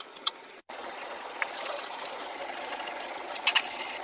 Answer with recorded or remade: remade